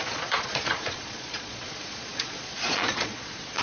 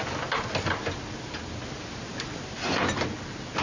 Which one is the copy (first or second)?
first